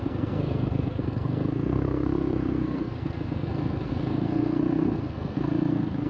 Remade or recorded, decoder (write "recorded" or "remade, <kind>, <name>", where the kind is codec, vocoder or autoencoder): remade, codec, SNAC